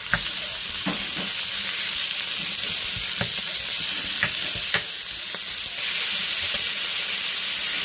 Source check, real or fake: real